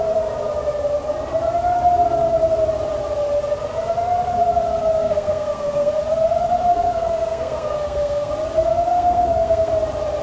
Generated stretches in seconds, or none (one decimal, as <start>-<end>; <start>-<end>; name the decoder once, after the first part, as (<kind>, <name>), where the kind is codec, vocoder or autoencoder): 5.0-5.9 (codec, SNAC); 6.7-8.3; 8.9-9.7